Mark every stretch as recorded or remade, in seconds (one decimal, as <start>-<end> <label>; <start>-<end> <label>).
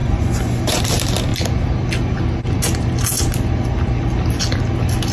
0.0-0.8 remade; 0.8-5.1 recorded